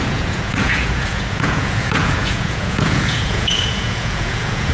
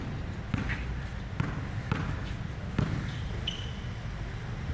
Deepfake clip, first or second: first